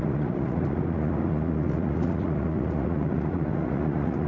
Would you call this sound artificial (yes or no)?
yes